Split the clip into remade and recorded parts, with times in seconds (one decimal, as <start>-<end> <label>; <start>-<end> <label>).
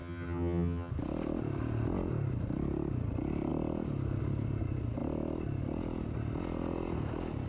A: 0.0-0.9 remade; 0.9-7.5 recorded